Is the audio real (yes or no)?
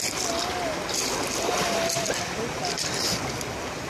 yes